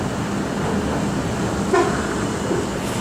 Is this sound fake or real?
real